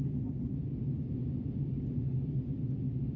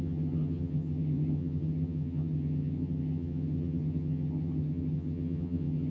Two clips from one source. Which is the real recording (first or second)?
first